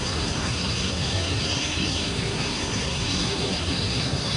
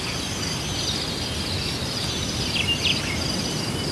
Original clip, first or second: second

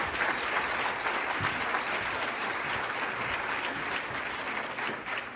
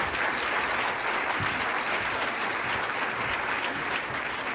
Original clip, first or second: second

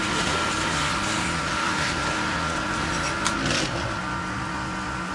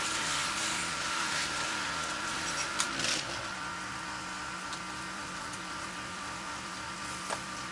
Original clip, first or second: first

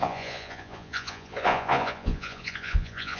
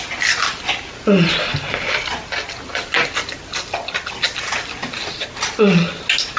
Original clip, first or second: second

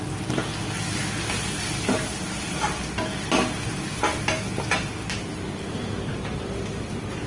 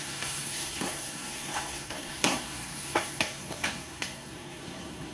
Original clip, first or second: first